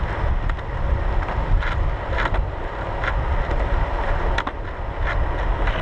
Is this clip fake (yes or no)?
no